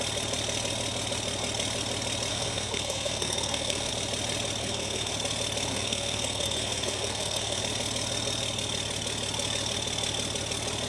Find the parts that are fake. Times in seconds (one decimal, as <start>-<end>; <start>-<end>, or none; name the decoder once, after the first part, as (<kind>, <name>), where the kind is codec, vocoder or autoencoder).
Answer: 2.3-3.9 (codec, SNAC); 4.6-5.1; 5.7-7.6